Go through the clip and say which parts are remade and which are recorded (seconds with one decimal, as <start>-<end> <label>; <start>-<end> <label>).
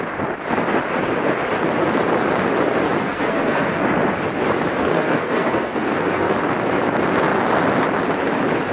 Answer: 0.0-3.0 recorded; 3.0-3.8 remade; 3.8-4.8 recorded; 4.8-6.4 remade; 6.4-8.7 recorded